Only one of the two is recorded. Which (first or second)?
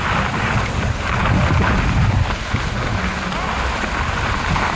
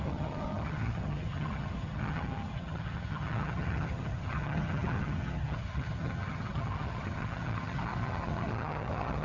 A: first